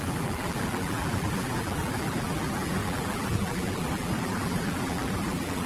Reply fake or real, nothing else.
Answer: fake